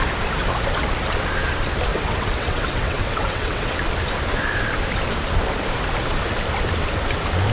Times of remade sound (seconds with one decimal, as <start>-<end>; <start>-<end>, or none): 1.9-3.7